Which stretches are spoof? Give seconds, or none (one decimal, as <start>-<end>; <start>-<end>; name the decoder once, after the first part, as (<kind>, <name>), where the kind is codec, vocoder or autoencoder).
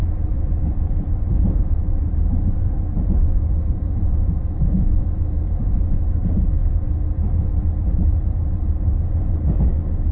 0.0-6.6 (vocoder, BigVGAN v2); 7.8-10.1